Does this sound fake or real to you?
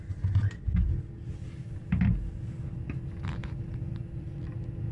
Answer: real